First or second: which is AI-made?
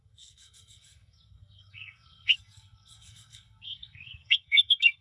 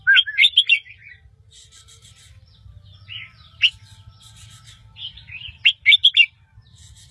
first